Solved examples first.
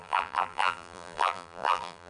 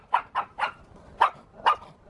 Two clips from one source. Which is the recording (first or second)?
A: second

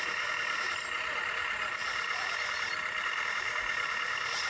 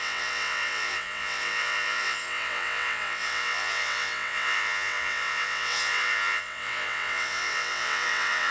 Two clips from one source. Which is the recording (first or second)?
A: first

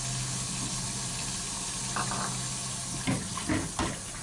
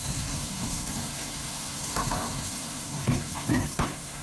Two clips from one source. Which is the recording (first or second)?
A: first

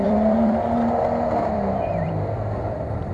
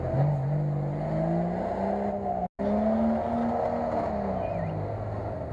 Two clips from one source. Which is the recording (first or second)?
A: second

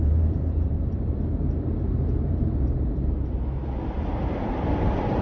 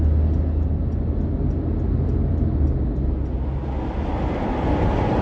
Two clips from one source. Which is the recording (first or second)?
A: second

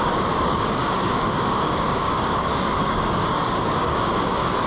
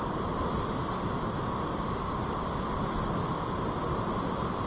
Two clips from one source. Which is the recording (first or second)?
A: second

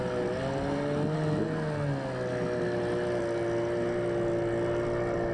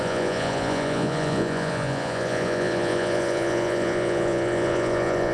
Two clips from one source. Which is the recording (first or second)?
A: first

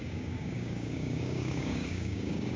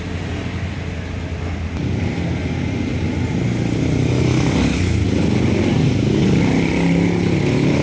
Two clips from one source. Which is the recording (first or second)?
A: second